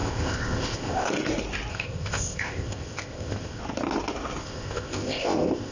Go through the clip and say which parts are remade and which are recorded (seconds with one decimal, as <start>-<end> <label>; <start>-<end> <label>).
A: 0.0-1.1 remade; 1.1-1.7 recorded; 1.7-3.6 remade; 3.6-4.4 recorded; 4.4-5.7 remade